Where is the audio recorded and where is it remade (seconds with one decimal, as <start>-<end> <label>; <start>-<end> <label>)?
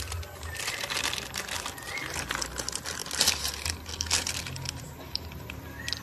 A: 0.0-6.0 recorded